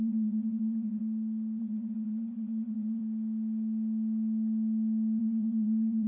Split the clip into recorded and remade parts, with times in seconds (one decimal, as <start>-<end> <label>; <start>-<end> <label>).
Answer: 0.0-1.0 remade; 1.0-1.6 recorded; 1.6-3.0 remade; 3.0-5.2 recorded; 5.2-6.1 remade